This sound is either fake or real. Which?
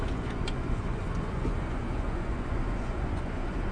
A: fake